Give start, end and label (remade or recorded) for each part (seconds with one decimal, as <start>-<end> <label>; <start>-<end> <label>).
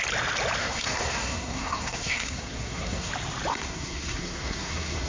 0.0-0.6 recorded; 0.6-3.1 remade; 3.1-3.5 recorded; 3.5-5.1 remade